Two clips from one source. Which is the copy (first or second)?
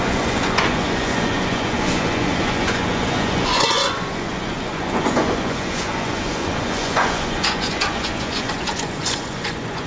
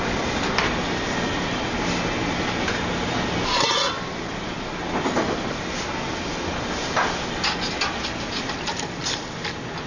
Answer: first